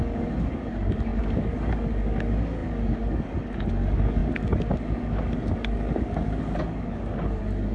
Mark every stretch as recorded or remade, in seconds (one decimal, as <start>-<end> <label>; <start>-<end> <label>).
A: 0.0-7.7 remade